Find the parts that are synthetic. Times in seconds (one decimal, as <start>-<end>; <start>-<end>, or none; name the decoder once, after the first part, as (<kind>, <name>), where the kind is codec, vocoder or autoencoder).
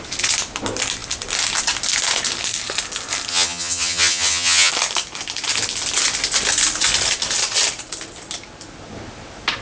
3.3-4.7 (vocoder, HiFi-GAN)